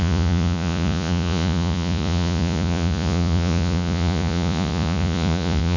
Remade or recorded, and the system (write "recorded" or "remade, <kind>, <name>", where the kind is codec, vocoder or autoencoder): remade, vocoder, Vocos